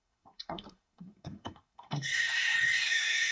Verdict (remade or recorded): remade